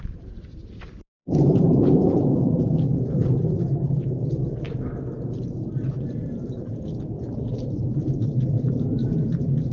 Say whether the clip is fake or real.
fake